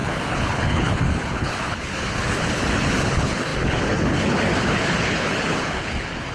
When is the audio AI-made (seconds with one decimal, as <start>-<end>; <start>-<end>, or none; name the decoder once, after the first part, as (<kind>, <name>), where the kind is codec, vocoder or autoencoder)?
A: 0.0-6.3 (codec, HILCodec)